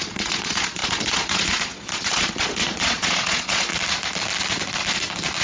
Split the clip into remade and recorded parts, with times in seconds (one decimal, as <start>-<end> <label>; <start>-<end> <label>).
0.0-3.7 remade; 3.7-5.4 recorded